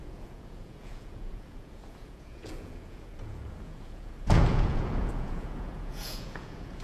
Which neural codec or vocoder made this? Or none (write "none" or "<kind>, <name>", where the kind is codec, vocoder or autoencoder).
vocoder, Vocos